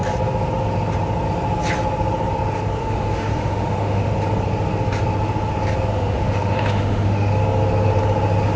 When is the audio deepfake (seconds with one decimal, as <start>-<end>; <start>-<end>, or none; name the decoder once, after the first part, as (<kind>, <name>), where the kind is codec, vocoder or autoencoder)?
2.8-4.1 (autoencoder, DAC-VAE); 5.9-7.3